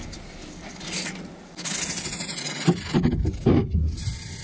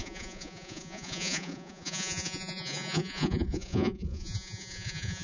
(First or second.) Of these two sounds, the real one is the first